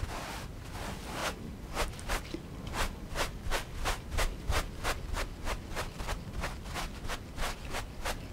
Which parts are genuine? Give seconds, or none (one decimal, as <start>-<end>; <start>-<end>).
0.0-3.5; 6.1-8.3